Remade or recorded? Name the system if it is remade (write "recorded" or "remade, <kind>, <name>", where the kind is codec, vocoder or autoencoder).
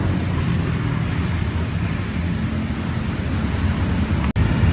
recorded